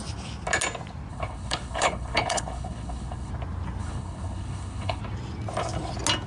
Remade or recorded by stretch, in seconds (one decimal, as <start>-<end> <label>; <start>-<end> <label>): 0.0-1.1 recorded; 1.1-3.3 remade; 3.3-3.8 recorded; 3.8-5.0 remade; 5.0-6.3 recorded